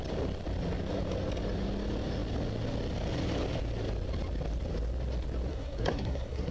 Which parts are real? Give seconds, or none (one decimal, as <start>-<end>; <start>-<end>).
0.0-5.5